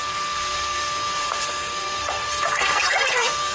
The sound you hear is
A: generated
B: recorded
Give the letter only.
A